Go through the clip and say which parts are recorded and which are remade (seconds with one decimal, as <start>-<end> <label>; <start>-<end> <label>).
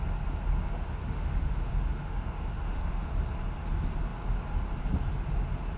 0.0-1.0 recorded; 1.0-3.1 remade; 3.1-5.8 recorded